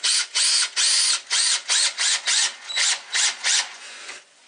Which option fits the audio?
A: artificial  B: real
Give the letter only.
A